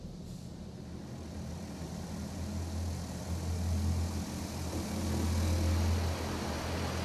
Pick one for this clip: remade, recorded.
recorded